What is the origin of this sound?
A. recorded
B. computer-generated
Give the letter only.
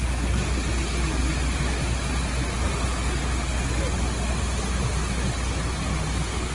A